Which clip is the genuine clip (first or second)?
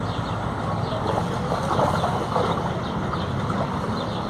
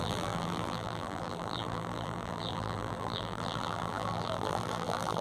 first